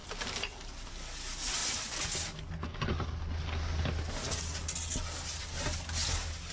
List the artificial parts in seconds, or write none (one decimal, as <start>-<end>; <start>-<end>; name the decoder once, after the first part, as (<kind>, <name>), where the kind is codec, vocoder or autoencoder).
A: none